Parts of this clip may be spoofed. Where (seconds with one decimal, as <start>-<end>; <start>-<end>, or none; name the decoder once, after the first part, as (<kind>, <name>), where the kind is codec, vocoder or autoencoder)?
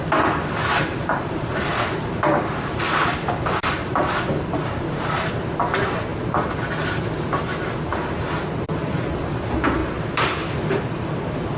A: 1.0-5.3 (vocoder, BigVGAN v2); 7.9-8.4; 9.8-11.2